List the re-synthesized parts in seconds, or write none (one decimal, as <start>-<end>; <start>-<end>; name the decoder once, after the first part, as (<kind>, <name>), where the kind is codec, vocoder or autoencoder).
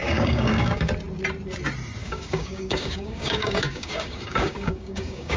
0.0-0.9 (codec, DAC); 2.0-5.4